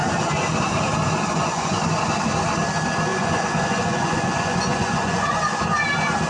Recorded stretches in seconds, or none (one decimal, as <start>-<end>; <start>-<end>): 0.0-1.3; 1.8-3.1; 5.6-6.3